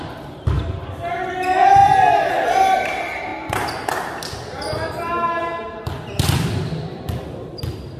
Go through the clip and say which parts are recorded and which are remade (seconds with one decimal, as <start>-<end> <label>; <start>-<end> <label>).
0.0-8.0 recorded